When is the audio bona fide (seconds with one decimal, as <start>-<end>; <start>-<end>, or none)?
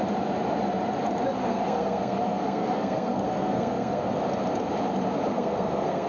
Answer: 0.0-1.4; 4.2-5.3